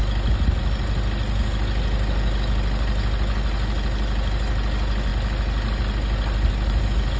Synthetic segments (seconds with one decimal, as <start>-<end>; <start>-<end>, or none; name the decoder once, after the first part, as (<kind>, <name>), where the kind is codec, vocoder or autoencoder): none